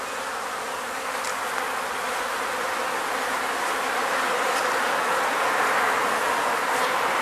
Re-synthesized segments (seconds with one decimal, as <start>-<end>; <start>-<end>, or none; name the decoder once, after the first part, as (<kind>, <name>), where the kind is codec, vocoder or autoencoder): none